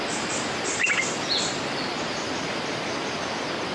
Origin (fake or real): real